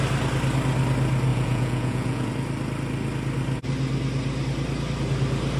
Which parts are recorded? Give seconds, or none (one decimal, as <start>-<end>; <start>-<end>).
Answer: 0.0-1.3; 2.3-5.6